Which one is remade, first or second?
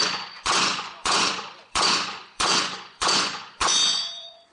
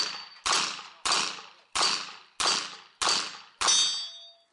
first